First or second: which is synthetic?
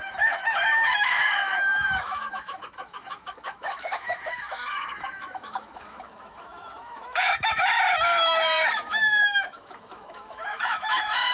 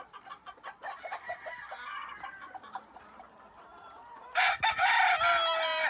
first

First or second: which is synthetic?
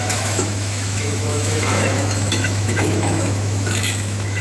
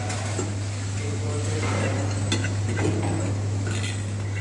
first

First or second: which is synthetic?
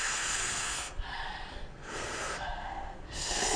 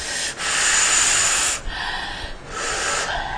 first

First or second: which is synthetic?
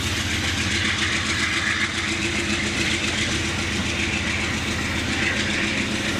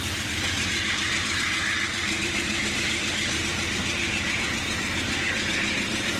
second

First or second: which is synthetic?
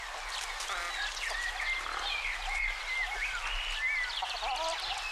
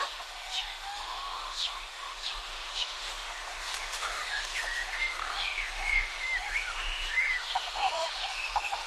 second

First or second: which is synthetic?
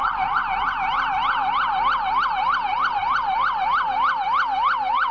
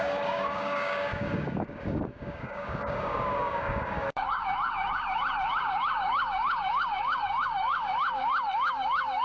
second